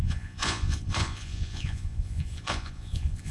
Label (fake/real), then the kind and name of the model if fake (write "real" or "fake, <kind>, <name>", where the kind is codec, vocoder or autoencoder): fake, vocoder, Vocos